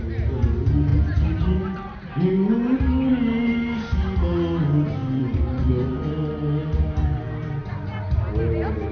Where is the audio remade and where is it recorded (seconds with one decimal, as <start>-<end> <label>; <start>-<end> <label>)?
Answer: 0.0-5.0 recorded; 5.0-5.7 remade; 5.7-8.9 recorded